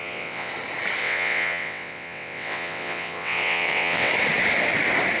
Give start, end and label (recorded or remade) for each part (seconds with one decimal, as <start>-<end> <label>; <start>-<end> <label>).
0.0-0.5 remade; 0.5-1.0 recorded; 1.0-4.1 remade; 4.1-5.2 recorded